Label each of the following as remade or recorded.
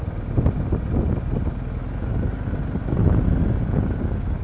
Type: recorded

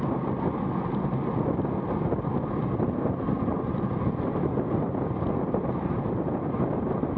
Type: recorded